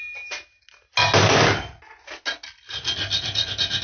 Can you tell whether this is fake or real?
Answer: real